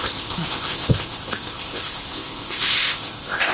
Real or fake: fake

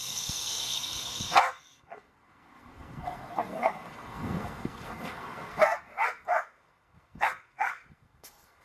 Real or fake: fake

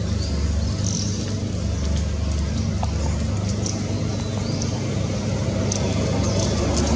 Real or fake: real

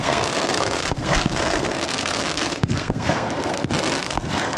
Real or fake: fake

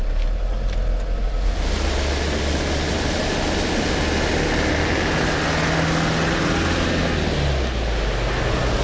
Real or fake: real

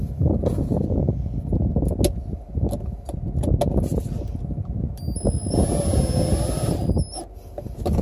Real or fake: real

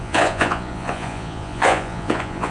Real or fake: fake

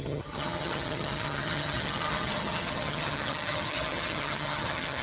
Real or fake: fake